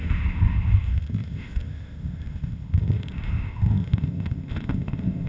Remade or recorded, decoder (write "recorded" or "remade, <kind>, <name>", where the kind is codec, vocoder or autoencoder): remade, codec, ZipCodec